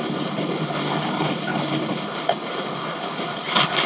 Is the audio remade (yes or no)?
yes